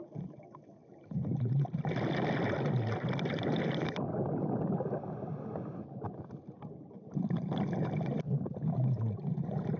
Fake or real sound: real